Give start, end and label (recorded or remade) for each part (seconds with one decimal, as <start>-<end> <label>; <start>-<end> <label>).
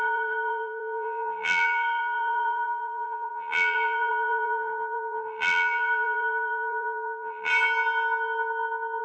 0.0-7.5 remade; 7.5-9.0 recorded